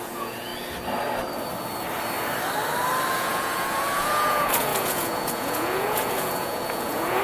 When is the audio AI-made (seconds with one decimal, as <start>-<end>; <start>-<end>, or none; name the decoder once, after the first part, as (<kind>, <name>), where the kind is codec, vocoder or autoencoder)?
0.0-0.5 (vocoder, Vocos); 3.1-7.2

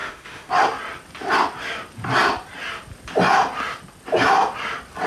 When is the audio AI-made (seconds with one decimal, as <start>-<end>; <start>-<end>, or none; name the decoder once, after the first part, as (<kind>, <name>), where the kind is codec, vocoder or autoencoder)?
0.0-0.5 (autoencoder, DAC-VAE)

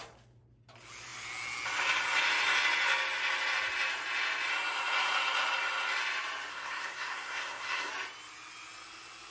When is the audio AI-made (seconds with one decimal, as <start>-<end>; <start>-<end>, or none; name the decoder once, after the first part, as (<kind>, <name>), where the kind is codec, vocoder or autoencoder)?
6.5-7.9 (codec, SNAC)

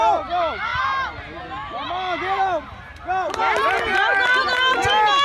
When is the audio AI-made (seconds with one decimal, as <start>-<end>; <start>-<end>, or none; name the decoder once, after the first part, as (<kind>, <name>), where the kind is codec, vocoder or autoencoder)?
none

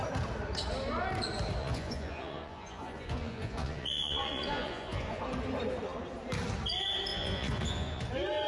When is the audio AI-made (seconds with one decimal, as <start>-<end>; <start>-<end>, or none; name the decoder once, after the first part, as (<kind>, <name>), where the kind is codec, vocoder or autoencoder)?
1.6-5.2 (vocoder, Vocos); 7.1-8.1

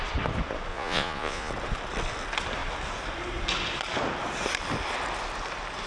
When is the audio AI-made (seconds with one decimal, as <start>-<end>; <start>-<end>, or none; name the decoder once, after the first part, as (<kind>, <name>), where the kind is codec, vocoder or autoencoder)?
0.7-1.5 (vocoder, Vocos)

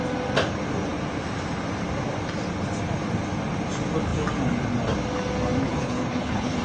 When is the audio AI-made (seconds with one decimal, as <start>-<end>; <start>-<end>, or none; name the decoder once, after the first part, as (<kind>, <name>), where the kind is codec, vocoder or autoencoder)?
5.6-6.6 (codec, HILCodec)